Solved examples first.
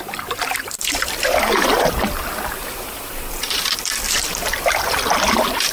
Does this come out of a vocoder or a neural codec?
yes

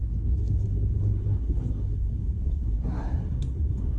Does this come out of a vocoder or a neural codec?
yes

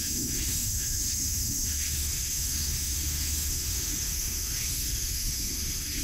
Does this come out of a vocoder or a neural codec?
yes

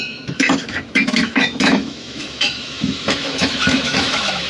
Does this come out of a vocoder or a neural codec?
yes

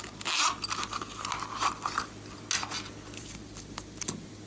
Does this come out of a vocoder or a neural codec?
no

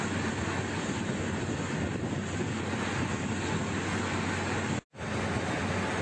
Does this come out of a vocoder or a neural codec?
no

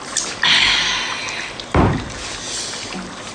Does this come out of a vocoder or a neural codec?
no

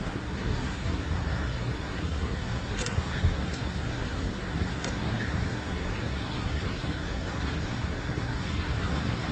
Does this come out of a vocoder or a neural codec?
yes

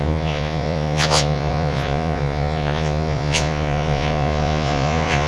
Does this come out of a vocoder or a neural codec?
yes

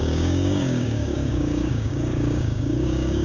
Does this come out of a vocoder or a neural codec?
yes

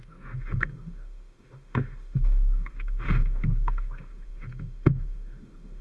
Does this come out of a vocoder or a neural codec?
yes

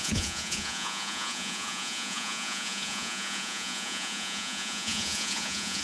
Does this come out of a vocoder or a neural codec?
yes